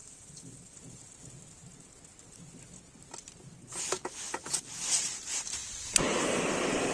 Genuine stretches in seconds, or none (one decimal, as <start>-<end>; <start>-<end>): 0.0-6.9